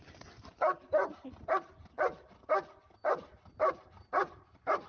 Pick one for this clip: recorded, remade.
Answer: recorded